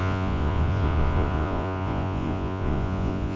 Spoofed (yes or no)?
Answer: yes